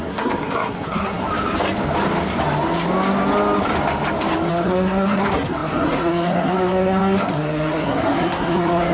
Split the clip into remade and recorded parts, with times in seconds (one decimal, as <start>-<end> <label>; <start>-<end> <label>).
0.0-1.2 remade; 1.2-4.5 recorded; 4.5-8.9 remade